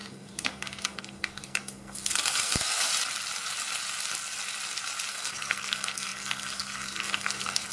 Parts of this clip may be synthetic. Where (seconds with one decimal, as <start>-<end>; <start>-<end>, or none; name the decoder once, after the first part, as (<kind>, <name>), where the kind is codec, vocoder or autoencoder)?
0.0-2.9 (codec, SNAC); 5.1-7.7